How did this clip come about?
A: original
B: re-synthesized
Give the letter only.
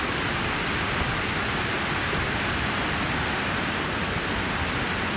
A